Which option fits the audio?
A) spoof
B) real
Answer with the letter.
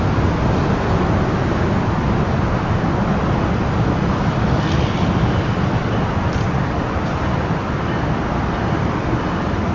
B